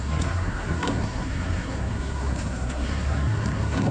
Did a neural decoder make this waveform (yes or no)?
yes